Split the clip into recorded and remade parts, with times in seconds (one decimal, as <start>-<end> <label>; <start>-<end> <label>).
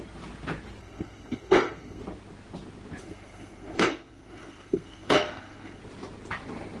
0.0-0.8 recorded; 0.8-2.0 remade; 2.0-3.0 recorded; 3.0-5.8 remade; 5.8-6.8 recorded